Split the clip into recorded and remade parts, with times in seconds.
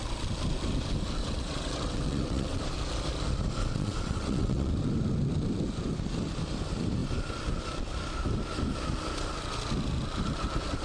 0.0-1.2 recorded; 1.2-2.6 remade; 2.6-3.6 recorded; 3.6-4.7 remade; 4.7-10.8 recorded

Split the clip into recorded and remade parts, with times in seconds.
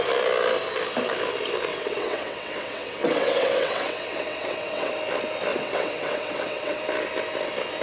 0.0-1.7 recorded; 1.7-4.9 remade; 4.9-5.5 recorded; 5.5-6.8 remade; 6.8-7.8 recorded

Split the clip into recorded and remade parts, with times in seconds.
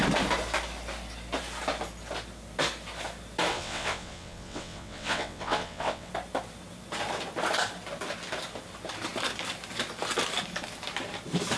0.0-3.5 recorded; 3.5-6.1 remade; 6.1-11.6 recorded